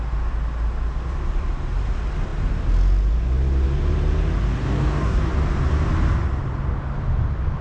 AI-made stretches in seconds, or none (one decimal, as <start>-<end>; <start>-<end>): 4.6-5.3